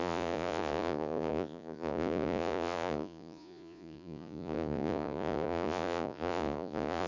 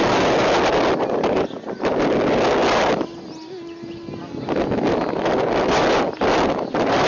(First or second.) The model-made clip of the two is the first